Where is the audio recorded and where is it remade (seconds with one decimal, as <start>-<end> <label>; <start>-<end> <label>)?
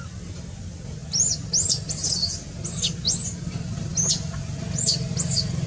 0.0-5.7 recorded